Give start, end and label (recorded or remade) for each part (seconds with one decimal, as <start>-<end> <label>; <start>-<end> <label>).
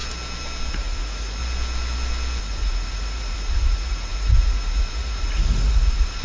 0.0-0.7 recorded; 0.7-1.4 remade; 1.4-2.4 recorded; 2.4-6.2 remade